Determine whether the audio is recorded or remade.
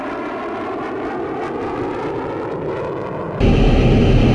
recorded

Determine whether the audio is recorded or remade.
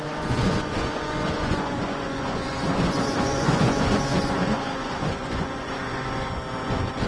remade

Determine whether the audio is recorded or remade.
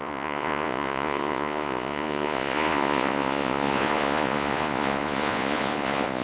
remade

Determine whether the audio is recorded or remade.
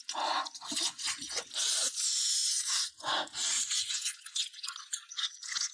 remade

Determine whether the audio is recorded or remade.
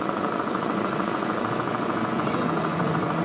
remade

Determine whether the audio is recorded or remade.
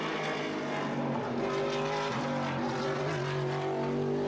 recorded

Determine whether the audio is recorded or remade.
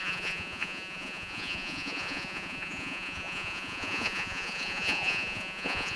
remade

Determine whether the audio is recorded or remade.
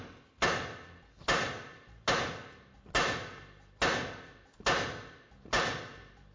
recorded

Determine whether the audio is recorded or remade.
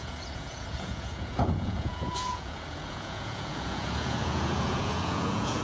remade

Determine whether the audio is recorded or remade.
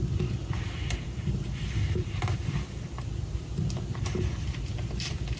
recorded